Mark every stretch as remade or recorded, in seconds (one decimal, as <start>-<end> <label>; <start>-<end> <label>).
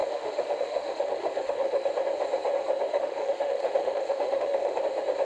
0.0-1.9 remade; 1.9-2.9 recorded; 2.9-4.8 remade; 4.8-5.2 recorded